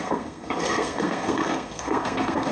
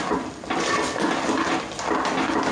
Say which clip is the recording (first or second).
second